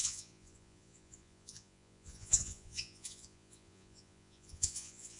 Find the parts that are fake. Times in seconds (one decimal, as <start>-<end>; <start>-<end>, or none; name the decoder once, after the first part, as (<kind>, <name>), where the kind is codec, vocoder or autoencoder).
0.0-5.2 (vocoder, Vocos)

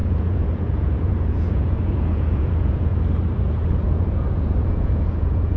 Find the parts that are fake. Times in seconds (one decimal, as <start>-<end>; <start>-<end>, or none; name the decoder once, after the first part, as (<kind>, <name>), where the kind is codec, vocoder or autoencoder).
0.0-2.9 (vocoder, Vocos); 3.4-5.6

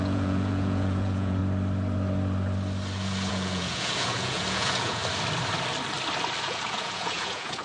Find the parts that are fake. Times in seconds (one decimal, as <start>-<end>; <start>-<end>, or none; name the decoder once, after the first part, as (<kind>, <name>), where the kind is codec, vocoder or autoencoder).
0.0-1.4 (vocoder, Vocos); 3.3-5.0; 6.4-7.6

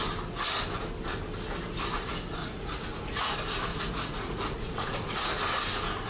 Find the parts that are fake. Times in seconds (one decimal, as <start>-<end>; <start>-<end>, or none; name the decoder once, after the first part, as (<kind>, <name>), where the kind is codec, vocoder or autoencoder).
2.4-3.3 (vocoder, Vocos); 3.7-5.2

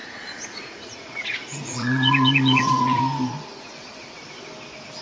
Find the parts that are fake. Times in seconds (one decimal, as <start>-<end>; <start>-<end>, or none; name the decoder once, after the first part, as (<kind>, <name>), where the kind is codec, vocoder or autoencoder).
0.0-3.0 (vocoder, Vocos)

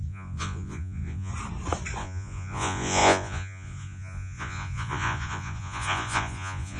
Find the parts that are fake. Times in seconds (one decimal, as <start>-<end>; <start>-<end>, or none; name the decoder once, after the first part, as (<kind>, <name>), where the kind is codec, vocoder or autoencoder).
0.0-1.3 (vocoder, Vocos); 2.0-6.8

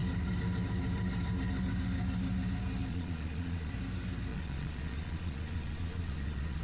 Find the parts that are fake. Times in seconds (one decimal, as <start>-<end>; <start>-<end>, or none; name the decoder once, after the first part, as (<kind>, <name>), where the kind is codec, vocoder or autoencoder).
2.9-3.7 (vocoder, Vocos); 4.3-6.6

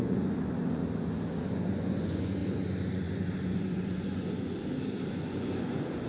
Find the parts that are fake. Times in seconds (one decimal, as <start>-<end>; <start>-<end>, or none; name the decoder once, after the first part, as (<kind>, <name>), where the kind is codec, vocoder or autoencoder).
0.0-0.8 (vocoder, Vocos); 1.4-4.6; 5.1-6.1